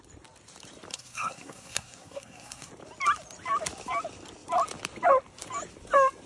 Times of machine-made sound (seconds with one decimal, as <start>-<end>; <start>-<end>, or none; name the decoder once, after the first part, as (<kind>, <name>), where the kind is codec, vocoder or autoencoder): 0.9-2.7 (codec, SNAC)